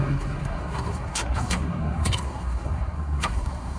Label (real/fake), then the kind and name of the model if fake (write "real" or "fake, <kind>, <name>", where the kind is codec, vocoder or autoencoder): fake, codec, SNAC